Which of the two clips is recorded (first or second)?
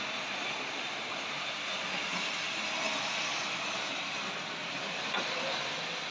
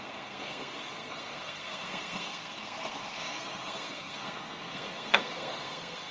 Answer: first